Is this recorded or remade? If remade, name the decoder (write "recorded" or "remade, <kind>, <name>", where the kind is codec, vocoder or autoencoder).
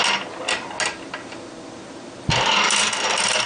recorded